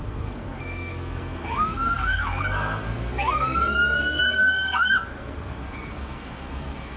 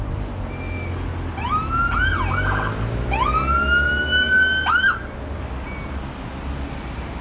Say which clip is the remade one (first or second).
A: first